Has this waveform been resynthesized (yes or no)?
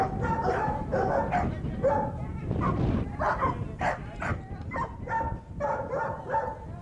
no